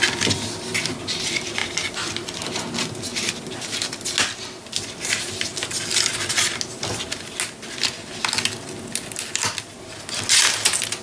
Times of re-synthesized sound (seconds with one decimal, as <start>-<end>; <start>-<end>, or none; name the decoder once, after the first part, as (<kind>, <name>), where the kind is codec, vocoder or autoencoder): none